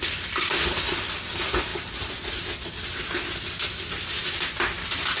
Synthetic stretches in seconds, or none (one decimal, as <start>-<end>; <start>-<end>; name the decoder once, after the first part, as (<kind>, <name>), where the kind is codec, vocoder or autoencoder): none